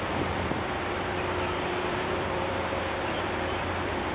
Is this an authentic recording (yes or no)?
no